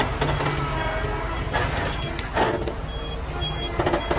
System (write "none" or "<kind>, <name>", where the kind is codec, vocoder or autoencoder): none